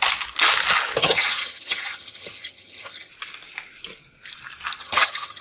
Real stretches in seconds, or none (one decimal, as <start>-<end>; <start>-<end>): 0.0-1.0; 3.1-4.8